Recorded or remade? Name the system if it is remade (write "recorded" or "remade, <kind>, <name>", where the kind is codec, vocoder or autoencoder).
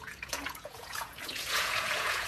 remade, vocoder, Vocos